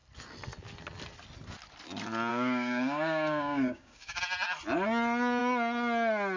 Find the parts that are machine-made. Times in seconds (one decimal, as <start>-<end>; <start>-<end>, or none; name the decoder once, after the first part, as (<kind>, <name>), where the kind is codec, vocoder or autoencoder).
2.3-4.2 (codec, DAC)